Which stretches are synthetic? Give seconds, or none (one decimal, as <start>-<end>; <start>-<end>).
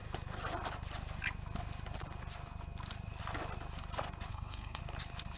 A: 4.3-4.8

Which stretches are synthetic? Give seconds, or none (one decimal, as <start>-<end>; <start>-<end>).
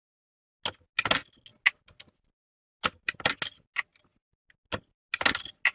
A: none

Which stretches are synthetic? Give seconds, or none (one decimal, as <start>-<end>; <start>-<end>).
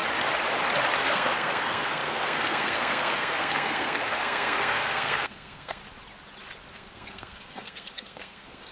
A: 1.0-5.8; 6.7-8.7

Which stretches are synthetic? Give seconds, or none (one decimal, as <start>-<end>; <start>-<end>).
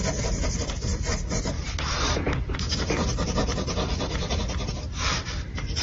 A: 0.9-4.4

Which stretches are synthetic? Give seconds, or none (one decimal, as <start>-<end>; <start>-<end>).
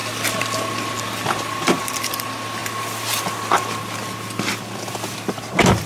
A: none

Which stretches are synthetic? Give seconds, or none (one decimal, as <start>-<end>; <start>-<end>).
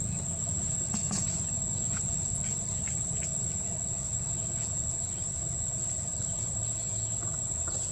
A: 1.0-2.8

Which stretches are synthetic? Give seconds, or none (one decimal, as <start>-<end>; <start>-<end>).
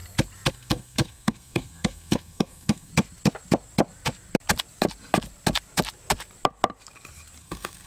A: 0.5-2.9; 7.4-7.9